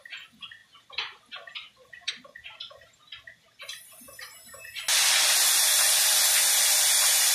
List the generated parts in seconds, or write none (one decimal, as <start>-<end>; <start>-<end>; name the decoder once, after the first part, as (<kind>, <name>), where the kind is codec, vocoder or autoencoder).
none